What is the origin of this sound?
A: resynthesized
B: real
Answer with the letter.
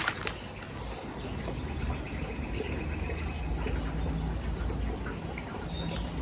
B